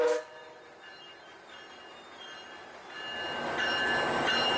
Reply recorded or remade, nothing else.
recorded